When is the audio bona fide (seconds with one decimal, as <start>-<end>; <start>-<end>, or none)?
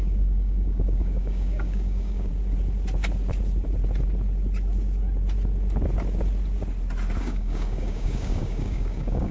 2.3-7.2